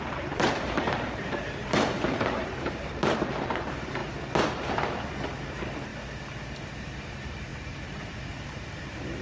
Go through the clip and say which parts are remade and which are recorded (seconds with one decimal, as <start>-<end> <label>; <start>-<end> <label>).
0.0-4.0 remade; 4.0-4.7 recorded; 4.7-5.9 remade; 5.9-6.8 recorded; 6.8-9.2 remade